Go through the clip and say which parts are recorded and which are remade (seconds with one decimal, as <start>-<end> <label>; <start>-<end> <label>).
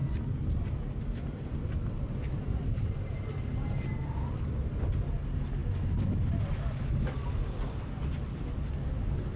0.0-9.4 recorded